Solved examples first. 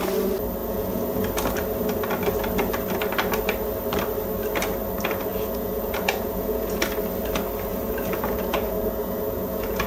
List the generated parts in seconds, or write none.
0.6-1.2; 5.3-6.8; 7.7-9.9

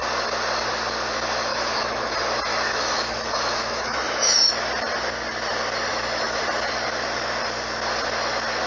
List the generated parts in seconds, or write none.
1.5-2.1; 2.5-4.5; 5.9-6.4